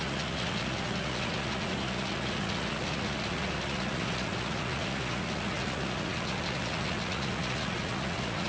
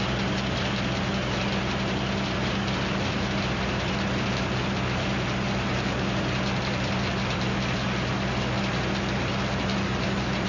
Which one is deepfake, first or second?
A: first